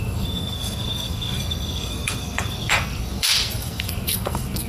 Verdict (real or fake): fake